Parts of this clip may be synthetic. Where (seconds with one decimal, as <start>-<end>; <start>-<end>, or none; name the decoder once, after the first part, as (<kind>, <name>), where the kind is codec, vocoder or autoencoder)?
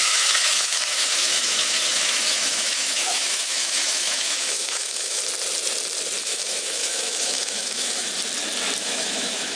0.0-5.2 (autoencoder, DAC-VAE); 6.2-8.1; 8.8-9.6